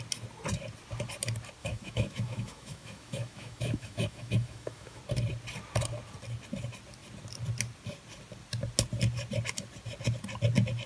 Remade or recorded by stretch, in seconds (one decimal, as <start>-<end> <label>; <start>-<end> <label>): 0.0-1.6 recorded; 1.6-5.0 remade; 5.0-10.9 recorded

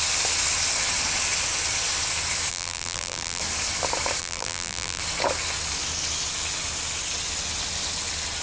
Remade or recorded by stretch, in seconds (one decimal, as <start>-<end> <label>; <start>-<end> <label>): 0.0-2.5 recorded; 2.5-3.4 remade; 3.4-4.2 recorded; 4.2-5.0 remade; 5.0-8.4 recorded

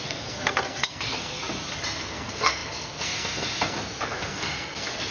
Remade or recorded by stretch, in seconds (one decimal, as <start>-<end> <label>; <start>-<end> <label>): 0.0-1.4 remade; 1.4-2.0 recorded; 2.0-5.1 remade

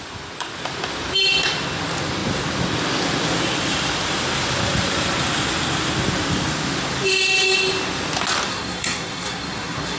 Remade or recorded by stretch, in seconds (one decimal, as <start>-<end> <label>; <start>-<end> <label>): 0.0-8.5 recorded; 8.5-10.0 remade

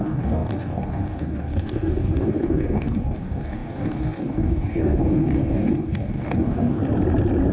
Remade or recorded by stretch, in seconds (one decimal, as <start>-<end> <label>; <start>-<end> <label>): 0.0-6.8 remade; 6.8-7.5 recorded

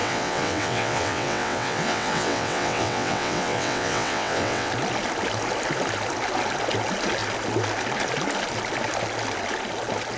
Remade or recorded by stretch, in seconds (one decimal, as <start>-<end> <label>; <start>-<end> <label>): 0.0-4.7 remade; 4.7-10.2 recorded

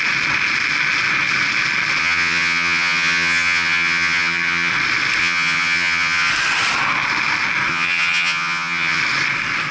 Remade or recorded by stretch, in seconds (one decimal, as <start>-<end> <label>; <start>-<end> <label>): 0.0-2.0 recorded; 2.0-4.7 remade; 4.7-5.2 recorded; 5.2-6.3 remade; 6.3-7.7 recorded; 7.7-9.0 remade; 9.0-9.7 recorded

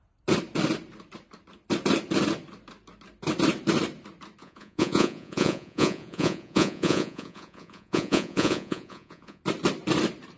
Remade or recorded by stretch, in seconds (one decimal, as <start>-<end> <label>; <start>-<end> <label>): 0.0-4.4 recorded; 4.4-9.4 remade; 9.4-10.4 recorded